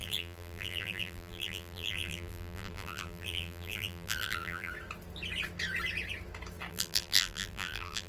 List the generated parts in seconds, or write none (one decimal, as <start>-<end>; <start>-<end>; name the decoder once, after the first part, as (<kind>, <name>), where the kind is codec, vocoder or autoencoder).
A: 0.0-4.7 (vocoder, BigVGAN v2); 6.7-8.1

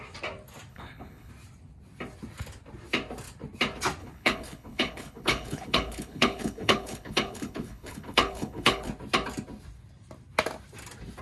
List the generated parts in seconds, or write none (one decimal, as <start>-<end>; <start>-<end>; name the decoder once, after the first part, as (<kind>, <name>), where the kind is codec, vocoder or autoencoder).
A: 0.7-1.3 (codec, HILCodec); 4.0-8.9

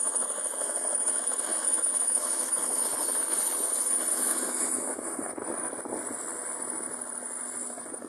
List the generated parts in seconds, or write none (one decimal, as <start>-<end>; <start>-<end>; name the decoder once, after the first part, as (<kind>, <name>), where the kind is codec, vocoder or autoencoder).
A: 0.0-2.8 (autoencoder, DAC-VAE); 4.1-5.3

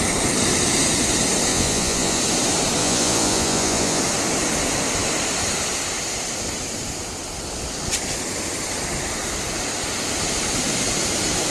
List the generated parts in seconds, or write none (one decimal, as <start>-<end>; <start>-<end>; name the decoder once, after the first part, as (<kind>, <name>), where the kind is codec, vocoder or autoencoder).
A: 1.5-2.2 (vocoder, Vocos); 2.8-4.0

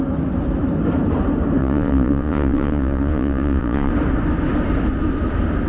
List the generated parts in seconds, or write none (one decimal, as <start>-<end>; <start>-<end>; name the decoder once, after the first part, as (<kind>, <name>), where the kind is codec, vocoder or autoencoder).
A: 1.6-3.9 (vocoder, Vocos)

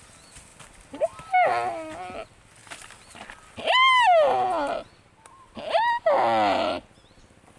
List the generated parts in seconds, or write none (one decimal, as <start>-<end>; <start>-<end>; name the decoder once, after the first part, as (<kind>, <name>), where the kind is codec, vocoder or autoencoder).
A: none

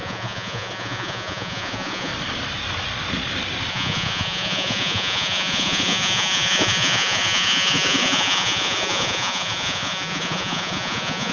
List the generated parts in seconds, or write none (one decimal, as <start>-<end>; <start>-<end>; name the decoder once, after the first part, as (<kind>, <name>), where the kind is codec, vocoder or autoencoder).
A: 0.0-2.1 (vocoder, Vocos); 3.7-11.3